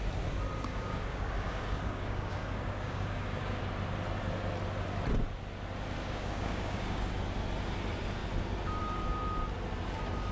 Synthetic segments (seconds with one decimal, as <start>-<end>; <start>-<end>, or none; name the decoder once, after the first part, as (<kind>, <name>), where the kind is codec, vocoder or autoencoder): 0.7-3.6 (codec, DAC); 6.0-7.1

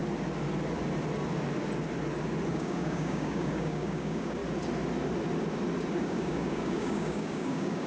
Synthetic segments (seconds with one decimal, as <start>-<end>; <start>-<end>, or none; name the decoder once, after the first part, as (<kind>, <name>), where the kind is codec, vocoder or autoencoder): 2.5-4.4 (codec, DAC); 5.9-7.9